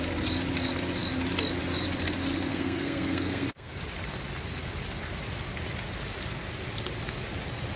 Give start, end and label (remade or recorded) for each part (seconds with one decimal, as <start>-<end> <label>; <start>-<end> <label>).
0.0-2.5 recorded; 2.5-3.8 remade; 3.8-7.8 recorded